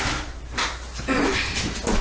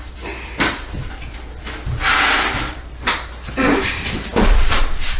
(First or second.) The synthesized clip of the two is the second